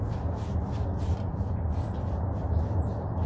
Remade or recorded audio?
recorded